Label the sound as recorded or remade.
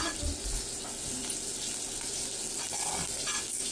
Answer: recorded